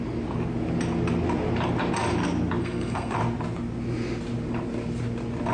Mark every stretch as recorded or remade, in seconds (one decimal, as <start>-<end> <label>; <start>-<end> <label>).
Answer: 0.0-2.6 recorded; 2.6-3.1 remade; 3.1-5.5 recorded